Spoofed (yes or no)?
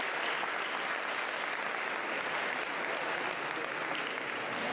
no